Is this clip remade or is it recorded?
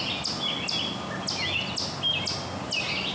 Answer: recorded